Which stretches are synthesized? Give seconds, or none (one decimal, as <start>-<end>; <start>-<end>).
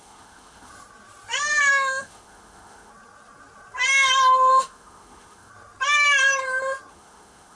0.0-0.7; 1.7-2.9; 4.5-5.5; 6.9-7.6